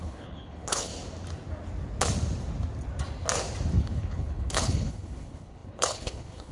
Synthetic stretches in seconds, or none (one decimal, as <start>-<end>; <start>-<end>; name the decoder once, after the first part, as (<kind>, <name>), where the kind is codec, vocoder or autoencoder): 0.0-0.9 (codec, HILCodec); 3.8-6.5